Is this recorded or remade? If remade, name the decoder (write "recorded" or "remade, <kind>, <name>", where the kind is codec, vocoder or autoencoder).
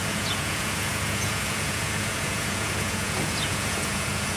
remade, vocoder, Vocos